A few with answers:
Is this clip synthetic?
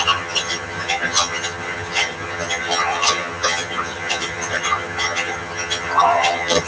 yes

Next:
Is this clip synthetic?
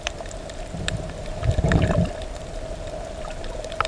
no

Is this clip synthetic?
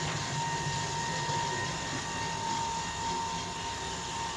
no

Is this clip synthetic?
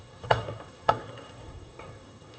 yes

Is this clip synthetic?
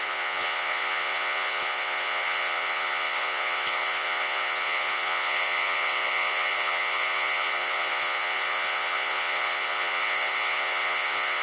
yes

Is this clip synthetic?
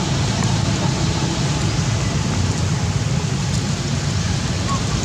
no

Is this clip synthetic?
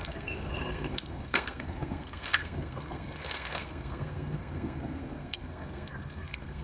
yes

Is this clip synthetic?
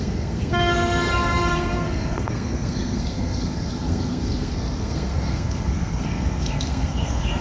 yes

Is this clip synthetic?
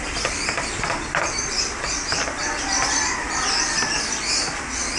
yes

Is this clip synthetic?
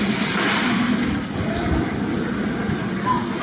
no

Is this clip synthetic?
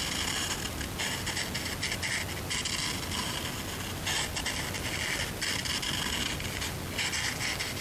no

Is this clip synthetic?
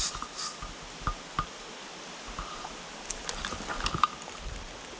no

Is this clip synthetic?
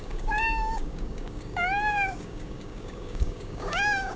yes